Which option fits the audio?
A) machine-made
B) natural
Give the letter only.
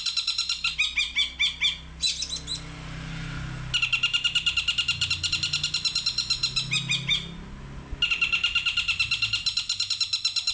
B